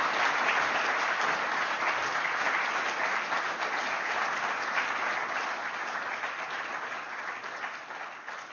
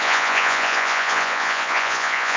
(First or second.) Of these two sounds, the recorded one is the first